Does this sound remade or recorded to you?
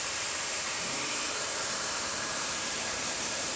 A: remade